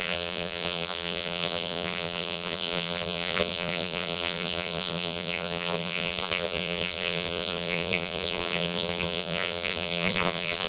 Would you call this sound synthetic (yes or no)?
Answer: yes